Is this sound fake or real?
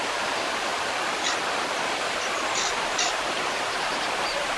fake